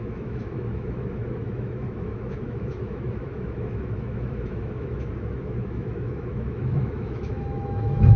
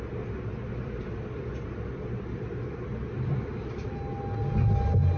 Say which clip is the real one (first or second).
second